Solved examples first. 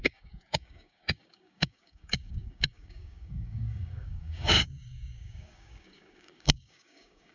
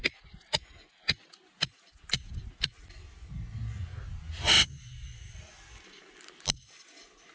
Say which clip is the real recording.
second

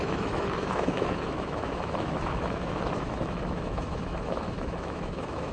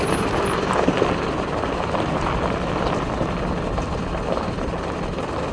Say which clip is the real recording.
second